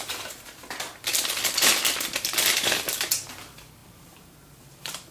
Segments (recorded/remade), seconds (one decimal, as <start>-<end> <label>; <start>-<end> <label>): 0.0-3.8 recorded; 3.8-5.1 remade